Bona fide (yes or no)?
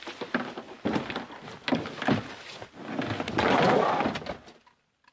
yes